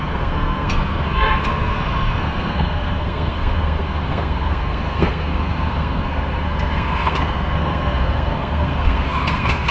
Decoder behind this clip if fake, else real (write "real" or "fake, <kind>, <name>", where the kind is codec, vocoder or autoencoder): fake, codec, SNAC